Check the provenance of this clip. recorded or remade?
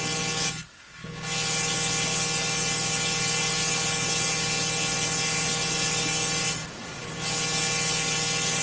recorded